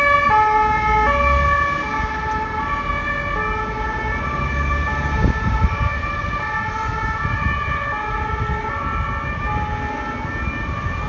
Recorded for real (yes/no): yes